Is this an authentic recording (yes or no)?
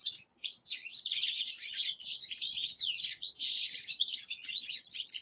no